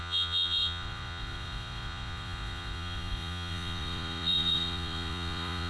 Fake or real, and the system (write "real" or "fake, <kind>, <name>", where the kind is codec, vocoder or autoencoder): fake, vocoder, Vocos